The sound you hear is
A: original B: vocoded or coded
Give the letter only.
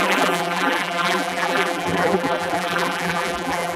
B